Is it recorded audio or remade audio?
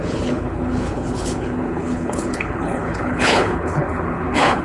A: remade